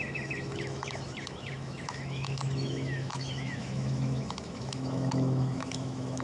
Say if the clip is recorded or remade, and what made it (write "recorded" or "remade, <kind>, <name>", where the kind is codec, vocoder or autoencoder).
remade, autoencoder, DAC-VAE